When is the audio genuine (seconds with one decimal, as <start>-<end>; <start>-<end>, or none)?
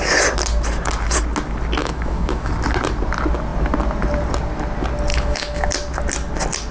0.0-1.8; 2.5-5.1; 5.7-6.7